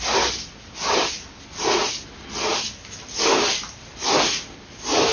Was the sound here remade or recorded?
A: recorded